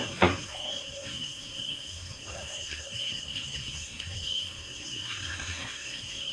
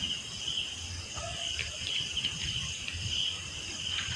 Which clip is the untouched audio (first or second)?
second